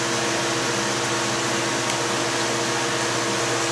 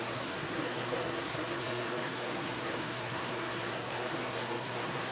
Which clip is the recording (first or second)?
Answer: first